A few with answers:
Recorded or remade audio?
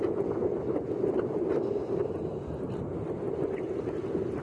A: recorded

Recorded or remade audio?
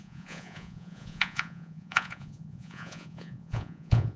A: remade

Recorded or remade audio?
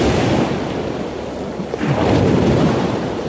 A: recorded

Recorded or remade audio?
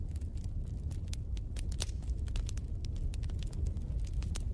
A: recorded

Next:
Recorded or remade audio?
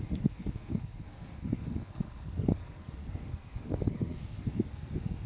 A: remade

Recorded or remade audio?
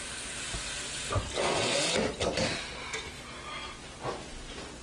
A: recorded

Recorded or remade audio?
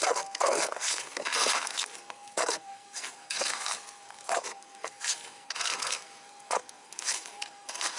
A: remade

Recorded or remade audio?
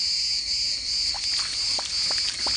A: recorded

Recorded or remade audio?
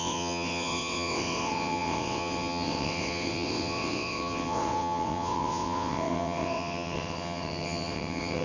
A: remade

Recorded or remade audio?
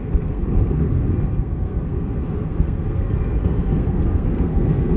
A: remade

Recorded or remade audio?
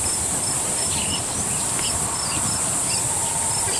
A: recorded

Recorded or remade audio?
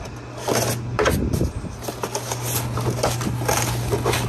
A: recorded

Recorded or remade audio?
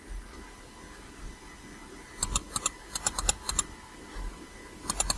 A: recorded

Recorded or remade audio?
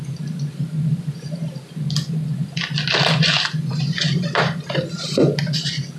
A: recorded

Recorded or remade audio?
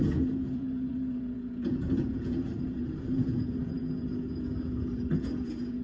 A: remade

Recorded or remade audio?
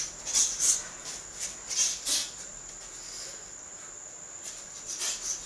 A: recorded